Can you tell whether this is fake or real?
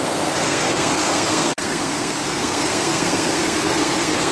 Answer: fake